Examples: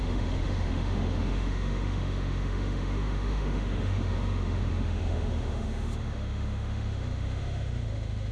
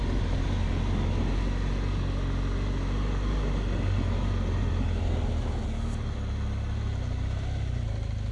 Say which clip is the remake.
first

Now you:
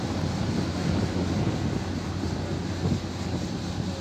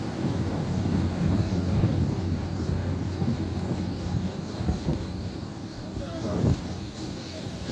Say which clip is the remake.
second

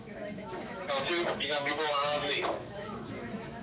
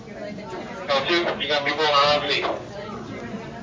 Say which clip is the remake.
first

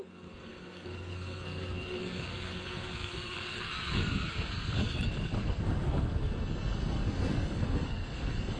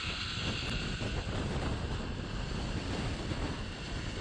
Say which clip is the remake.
first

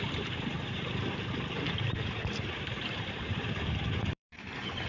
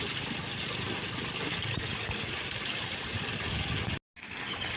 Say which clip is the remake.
first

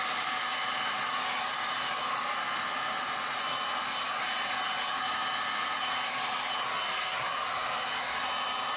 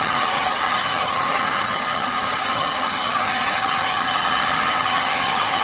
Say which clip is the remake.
second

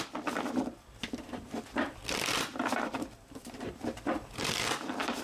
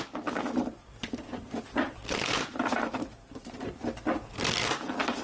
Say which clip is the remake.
first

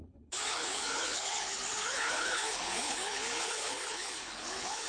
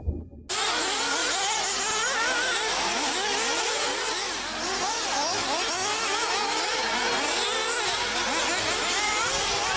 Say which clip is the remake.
first